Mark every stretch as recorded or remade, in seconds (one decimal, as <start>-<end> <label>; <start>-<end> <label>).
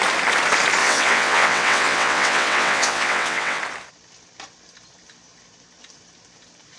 0.0-0.8 recorded; 0.8-3.6 remade; 3.6-6.8 recorded